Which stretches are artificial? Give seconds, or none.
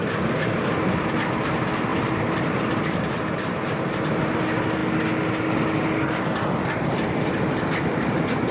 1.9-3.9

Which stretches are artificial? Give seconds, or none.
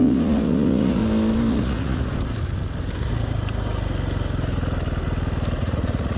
0.0-1.0; 1.5-2.1; 5.6-6.2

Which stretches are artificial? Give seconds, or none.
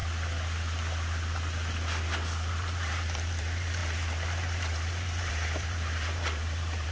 2.5-6.9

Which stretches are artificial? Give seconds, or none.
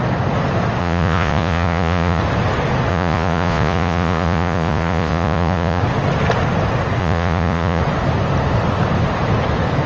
0.8-2.2; 2.9-5.8; 7.0-7.8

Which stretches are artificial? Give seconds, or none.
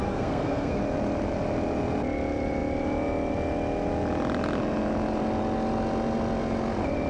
0.0-0.8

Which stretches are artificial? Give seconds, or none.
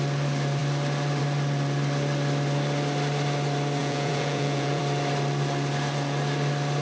3.8-4.8